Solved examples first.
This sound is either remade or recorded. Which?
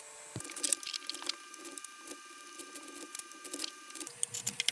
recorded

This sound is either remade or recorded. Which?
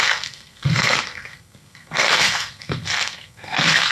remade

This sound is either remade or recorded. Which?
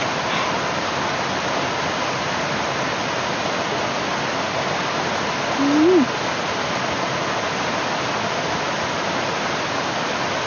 recorded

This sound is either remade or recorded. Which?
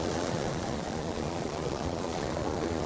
remade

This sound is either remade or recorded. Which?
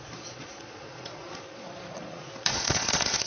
remade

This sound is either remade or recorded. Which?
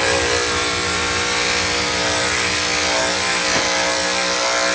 recorded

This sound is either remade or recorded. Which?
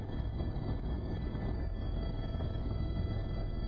remade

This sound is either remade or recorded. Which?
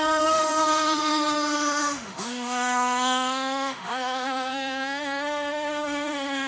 remade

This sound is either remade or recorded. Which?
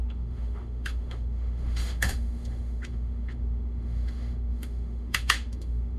remade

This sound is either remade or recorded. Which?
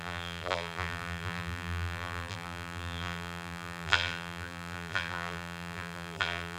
remade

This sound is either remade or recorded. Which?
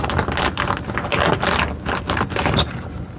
recorded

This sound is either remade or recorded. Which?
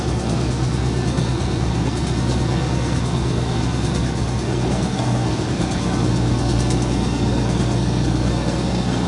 remade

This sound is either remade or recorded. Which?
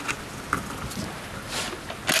recorded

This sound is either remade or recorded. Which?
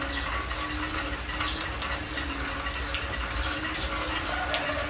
recorded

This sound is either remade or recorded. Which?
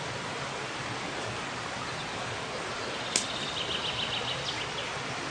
recorded